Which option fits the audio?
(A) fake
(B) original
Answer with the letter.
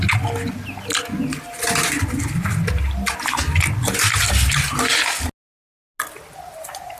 B